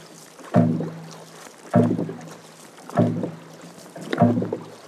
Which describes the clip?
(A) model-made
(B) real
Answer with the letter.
B